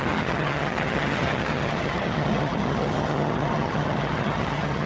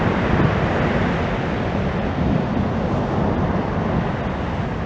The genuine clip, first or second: second